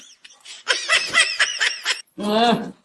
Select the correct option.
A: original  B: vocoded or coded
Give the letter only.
B